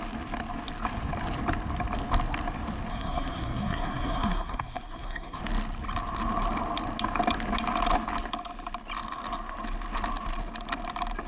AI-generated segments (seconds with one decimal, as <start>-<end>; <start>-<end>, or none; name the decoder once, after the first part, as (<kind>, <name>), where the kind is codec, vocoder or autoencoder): 2.9-5.4 (codec, SNAC)